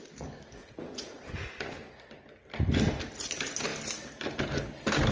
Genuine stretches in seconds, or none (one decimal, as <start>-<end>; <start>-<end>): 0.0-0.6; 1.2-5.1